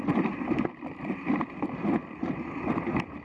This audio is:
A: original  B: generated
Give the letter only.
A